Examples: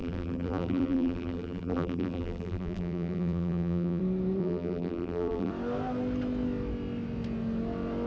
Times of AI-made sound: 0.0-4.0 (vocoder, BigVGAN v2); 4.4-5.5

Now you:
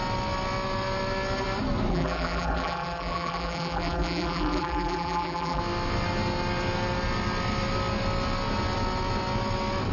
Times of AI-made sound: 1.9-5.6 (vocoder, BigVGAN v2)

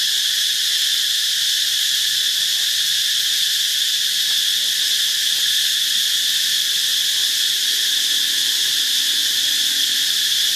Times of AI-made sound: 1.2-4.2 (vocoder, BigVGAN v2); 9.2-10.2

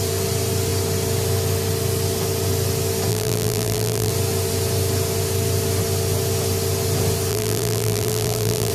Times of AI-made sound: 3.1-4.1 (vocoder, BigVGAN v2); 7.3-8.7

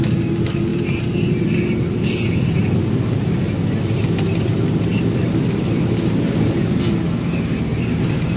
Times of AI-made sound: 0.7-1.4 (vocoder, BigVGAN v2); 7.7-8.4

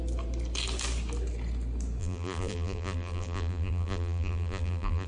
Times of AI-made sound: 2.0-5.1 (vocoder, BigVGAN v2)

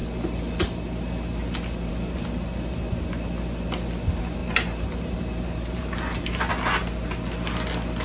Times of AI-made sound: 4.4-6.5 (vocoder, BigVGAN v2)